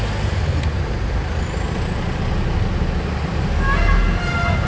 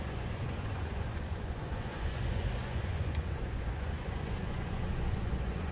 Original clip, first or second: first